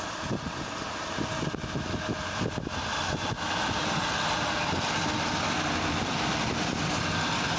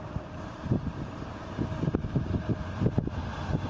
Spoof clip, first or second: second